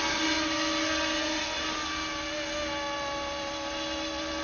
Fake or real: real